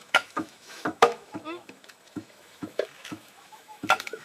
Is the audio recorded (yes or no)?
no